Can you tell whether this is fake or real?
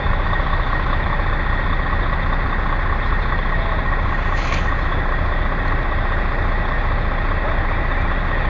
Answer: real